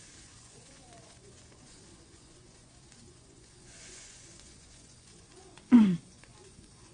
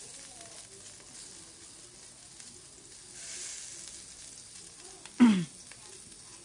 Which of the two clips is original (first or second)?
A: second